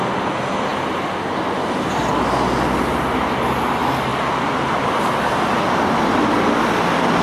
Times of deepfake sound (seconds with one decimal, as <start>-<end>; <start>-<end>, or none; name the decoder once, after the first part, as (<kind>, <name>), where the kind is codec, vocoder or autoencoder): none